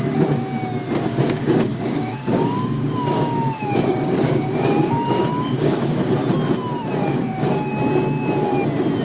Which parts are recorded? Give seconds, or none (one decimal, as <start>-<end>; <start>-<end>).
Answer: 0.0-1.1; 6.1-7.0; 7.7-9.0